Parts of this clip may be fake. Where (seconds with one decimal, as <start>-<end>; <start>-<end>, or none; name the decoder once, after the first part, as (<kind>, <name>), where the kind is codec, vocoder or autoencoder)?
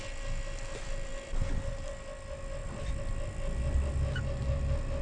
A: none